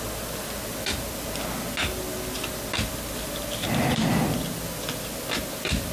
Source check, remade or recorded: recorded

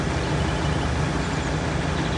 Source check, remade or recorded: recorded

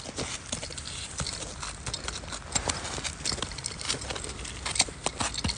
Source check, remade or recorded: recorded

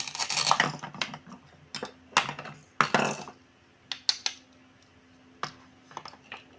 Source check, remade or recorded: recorded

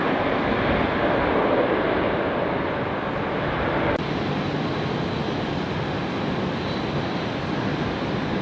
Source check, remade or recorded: remade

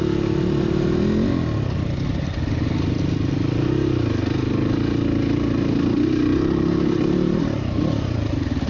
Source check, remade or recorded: recorded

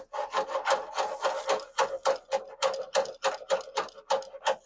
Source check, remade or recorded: recorded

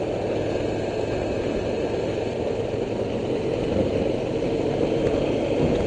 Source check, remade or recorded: recorded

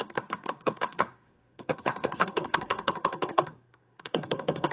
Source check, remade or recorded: remade